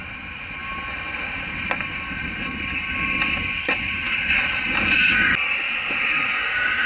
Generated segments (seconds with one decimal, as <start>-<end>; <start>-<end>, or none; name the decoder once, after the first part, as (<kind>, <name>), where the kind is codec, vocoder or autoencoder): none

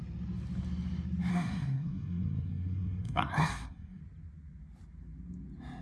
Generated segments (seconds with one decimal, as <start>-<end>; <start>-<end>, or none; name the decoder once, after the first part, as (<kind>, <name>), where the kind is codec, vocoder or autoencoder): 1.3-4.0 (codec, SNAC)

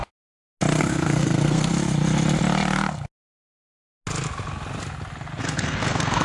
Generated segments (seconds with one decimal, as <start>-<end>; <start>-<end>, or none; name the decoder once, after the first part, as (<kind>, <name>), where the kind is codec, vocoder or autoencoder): 0.8-1.7 (codec, SNAC); 5.4-6.2